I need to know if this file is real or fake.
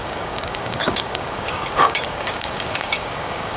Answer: fake